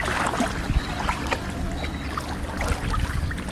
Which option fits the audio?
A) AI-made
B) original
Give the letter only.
B